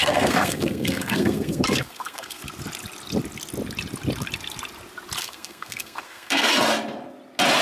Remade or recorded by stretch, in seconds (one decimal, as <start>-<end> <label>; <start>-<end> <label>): 0.0-2.4 remade; 2.4-5.2 recorded; 5.2-6.5 remade; 6.5-7.6 recorded